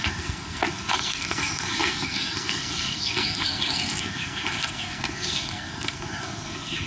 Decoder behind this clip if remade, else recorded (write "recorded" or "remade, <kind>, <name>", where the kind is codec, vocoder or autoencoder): remade, codec, SNAC